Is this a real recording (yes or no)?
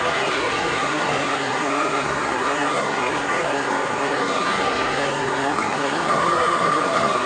no